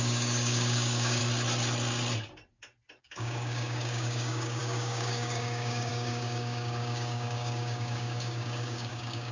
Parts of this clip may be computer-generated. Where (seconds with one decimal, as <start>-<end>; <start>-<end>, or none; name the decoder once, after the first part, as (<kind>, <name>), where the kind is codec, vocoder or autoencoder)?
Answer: 0.0-1.2 (codec, DAC); 3.0-9.3